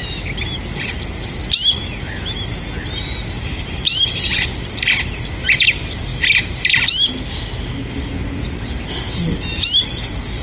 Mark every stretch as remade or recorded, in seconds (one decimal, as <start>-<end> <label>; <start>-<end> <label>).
0.0-10.4 recorded